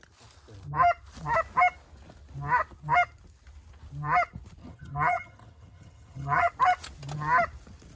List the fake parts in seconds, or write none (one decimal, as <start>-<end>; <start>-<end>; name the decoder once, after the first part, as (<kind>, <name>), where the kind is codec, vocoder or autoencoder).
4.6-6.5 (vocoder, HiFi-GAN)